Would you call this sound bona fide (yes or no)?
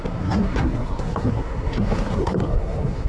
no